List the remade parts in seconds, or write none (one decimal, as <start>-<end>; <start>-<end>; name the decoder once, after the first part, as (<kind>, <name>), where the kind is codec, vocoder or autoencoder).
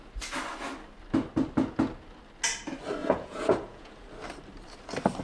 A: 3.0-3.9 (vocoder, Vocos)